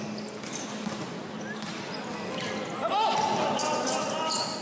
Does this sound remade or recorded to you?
recorded